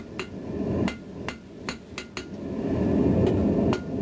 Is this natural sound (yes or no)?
yes